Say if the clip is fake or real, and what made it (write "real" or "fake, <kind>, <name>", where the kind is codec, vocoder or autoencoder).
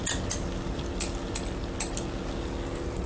real